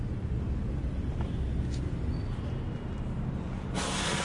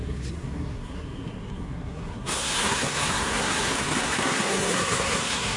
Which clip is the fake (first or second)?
second